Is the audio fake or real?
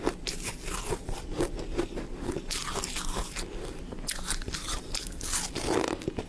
real